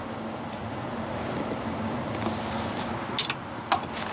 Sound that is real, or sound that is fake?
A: real